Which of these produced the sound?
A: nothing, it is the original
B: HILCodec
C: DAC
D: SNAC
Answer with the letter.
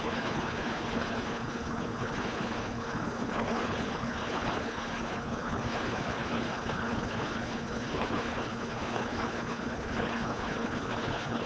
B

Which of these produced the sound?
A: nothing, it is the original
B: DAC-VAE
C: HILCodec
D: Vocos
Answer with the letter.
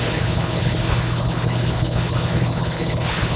C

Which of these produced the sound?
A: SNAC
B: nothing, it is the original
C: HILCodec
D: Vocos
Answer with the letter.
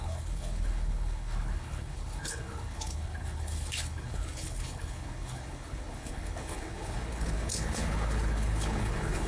C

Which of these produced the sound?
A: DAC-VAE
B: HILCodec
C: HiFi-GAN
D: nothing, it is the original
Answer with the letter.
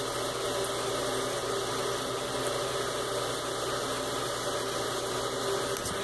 D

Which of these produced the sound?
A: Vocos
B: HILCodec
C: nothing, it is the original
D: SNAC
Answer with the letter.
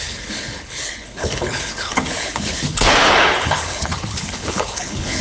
B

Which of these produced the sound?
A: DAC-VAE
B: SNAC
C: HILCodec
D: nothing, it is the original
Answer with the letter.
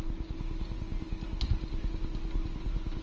D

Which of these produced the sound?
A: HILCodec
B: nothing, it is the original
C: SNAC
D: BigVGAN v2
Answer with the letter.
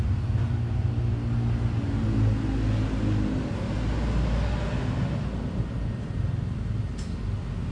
B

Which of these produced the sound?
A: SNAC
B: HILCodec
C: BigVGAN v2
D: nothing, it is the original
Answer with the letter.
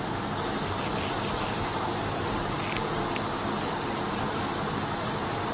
D